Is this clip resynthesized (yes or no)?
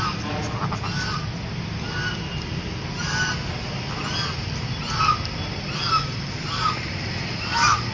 no